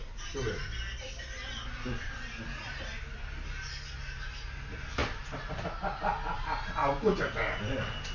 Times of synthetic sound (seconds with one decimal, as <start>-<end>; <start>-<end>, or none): none